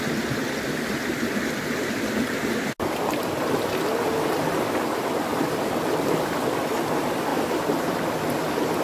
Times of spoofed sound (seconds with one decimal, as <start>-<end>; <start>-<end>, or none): 5.3-6.6